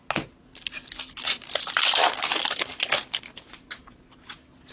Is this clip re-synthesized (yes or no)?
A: no